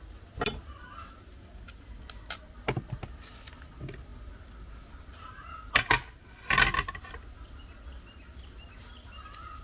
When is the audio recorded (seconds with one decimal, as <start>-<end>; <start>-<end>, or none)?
0.0-9.6